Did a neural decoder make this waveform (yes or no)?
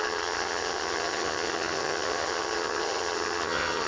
yes